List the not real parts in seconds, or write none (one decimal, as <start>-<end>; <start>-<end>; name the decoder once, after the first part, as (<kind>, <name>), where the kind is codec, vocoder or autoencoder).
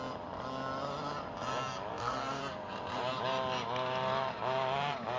1.9-2.4 (codec, SNAC)